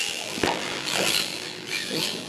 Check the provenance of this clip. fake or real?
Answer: fake